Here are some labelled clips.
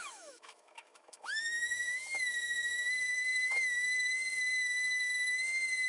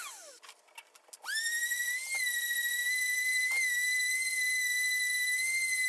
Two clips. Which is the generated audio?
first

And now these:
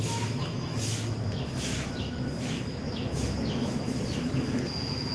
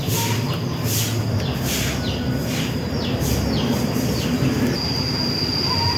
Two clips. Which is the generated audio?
first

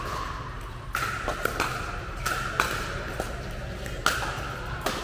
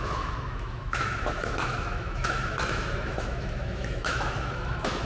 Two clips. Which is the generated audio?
second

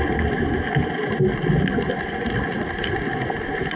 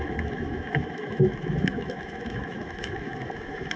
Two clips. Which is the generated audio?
second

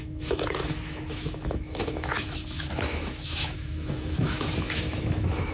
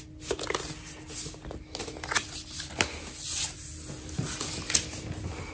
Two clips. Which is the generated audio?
first